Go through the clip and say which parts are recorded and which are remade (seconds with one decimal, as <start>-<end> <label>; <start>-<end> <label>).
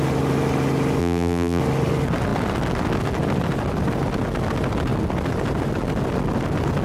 0.0-1.0 recorded; 1.0-1.6 remade; 1.6-6.8 recorded